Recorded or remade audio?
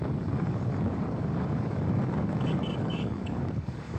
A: remade